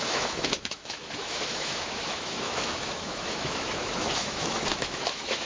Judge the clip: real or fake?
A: fake